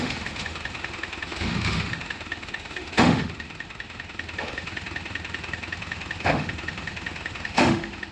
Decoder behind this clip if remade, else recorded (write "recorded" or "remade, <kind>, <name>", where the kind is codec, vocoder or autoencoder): remade, autoencoder, DAC-VAE